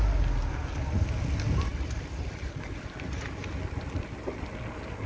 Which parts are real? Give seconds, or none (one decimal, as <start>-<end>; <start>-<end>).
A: 0.0-5.1